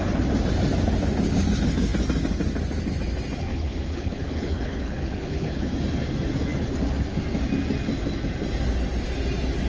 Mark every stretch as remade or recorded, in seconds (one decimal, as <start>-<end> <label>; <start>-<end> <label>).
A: 0.0-3.5 recorded; 3.5-5.7 remade; 5.7-9.7 recorded